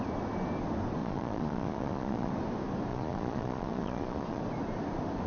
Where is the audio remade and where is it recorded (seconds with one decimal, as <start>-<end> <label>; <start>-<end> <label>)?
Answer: 0.0-1.0 recorded; 1.0-2.3 remade; 2.3-2.9 recorded; 2.9-4.4 remade; 4.4-5.3 recorded